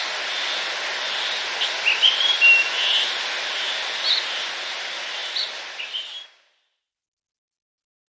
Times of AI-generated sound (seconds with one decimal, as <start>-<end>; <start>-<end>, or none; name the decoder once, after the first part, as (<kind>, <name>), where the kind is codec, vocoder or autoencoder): none

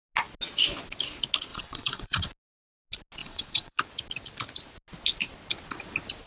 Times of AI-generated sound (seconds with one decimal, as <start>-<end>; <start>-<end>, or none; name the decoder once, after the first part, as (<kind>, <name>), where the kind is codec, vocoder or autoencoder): 1.5-2.3 (vocoder, WaveNeXt); 3.2-3.8

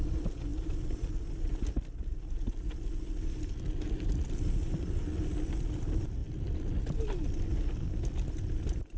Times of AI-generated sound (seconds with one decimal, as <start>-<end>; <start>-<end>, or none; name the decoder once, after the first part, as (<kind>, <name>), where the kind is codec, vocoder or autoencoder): none

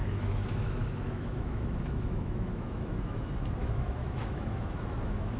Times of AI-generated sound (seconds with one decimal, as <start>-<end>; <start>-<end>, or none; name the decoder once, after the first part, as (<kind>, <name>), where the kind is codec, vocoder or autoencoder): 0.0-3.2 (autoencoder, DAC-VAE); 3.6-5.4

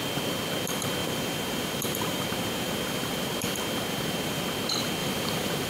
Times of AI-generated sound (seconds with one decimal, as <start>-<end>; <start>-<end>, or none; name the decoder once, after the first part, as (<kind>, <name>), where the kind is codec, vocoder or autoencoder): 1.0-4.4 (vocoder, BigVGAN v2); 5.0-5.7